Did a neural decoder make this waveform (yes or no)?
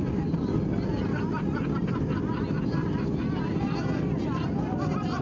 no